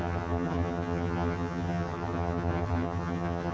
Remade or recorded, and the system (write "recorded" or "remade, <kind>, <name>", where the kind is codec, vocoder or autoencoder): remade, vocoder, HiFi-GAN